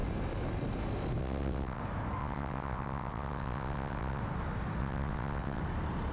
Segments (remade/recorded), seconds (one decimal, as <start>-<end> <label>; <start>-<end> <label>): 0.0-1.2 recorded; 1.2-1.8 remade; 1.8-2.2 recorded; 2.2-4.2 remade; 4.2-4.8 recorded; 4.8-5.6 remade; 5.6-6.1 recorded